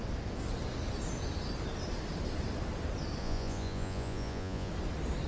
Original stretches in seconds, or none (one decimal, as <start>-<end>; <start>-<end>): 0.0-3.2; 4.7-5.3